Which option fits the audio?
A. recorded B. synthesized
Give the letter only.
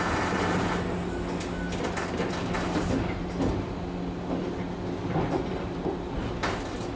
A